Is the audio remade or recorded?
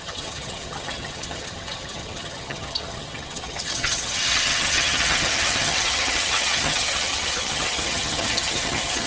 remade